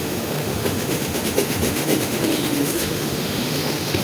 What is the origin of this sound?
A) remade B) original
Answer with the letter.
A